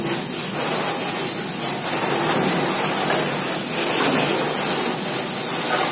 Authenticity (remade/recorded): recorded